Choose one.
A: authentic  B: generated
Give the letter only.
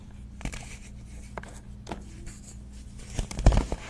A